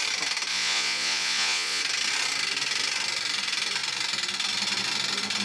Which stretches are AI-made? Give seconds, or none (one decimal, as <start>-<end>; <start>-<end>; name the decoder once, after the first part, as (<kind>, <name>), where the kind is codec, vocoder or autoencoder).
0.5-1.8 (vocoder, Vocos)